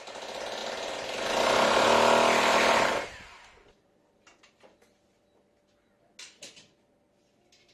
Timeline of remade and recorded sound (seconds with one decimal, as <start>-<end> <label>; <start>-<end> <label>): 0.0-7.7 recorded